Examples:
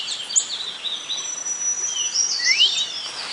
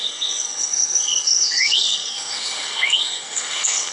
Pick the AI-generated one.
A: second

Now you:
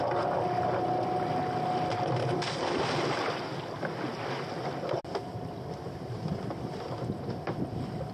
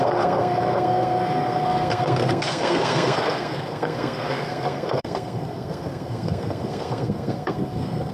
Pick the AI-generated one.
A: second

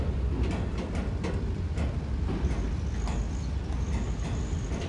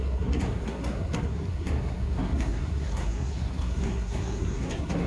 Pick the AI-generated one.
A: second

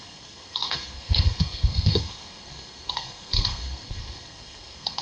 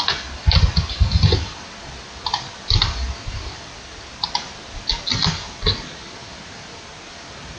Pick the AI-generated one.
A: first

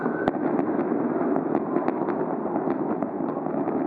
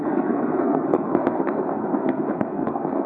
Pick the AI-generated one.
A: second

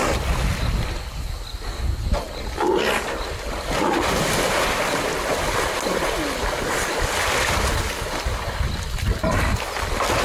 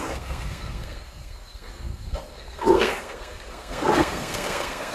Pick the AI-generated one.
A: second